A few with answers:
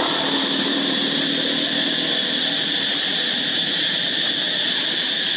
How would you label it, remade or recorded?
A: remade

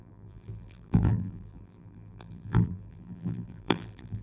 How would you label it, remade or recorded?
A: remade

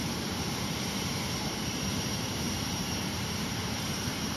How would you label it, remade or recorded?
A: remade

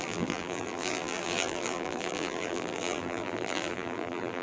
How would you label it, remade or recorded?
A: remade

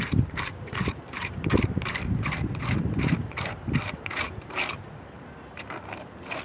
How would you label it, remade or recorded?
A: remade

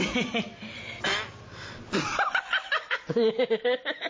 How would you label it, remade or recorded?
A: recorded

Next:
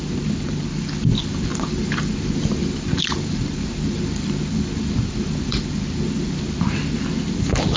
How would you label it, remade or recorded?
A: remade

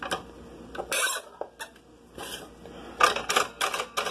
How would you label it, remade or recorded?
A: recorded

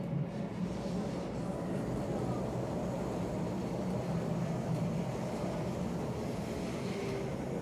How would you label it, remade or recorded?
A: recorded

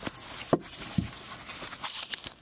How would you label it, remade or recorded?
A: recorded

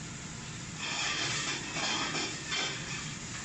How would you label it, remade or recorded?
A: recorded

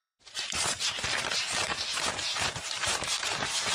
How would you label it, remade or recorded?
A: remade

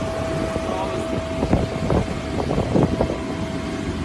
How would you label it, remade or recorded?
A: recorded